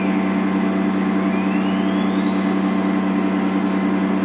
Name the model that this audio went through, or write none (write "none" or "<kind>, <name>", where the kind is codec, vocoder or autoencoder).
none